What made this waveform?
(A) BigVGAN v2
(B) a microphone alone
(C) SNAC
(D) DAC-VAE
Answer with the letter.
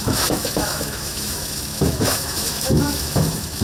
D